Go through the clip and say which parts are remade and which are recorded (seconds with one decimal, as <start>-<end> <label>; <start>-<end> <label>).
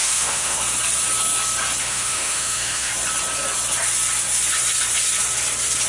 0.0-0.6 remade; 0.6-1.8 recorded; 1.8-2.9 remade; 2.9-5.9 recorded